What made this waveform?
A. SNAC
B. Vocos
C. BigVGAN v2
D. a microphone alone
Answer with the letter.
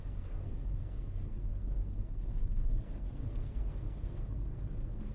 A